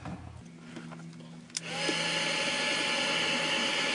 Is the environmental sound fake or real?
real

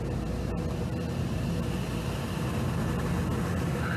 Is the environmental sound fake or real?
real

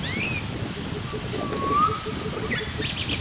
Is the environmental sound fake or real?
real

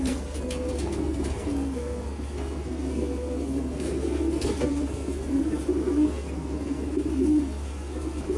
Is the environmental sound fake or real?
fake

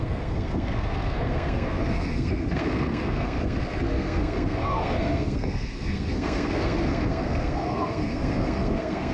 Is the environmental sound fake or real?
fake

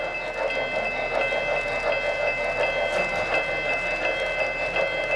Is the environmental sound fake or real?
real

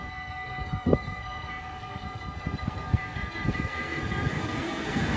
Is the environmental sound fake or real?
fake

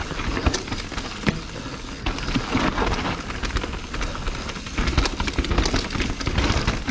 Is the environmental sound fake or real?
real